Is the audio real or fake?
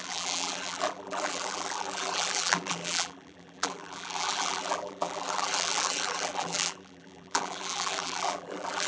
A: fake